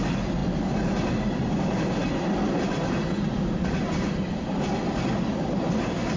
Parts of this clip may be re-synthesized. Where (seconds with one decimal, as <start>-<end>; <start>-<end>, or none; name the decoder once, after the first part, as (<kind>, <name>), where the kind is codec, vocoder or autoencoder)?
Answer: none